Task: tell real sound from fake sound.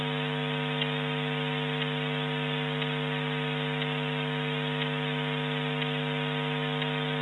real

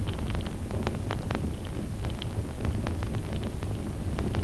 real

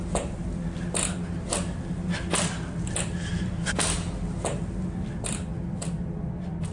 real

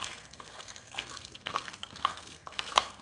fake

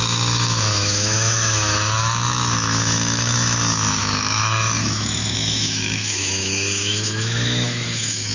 fake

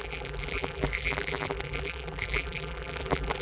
fake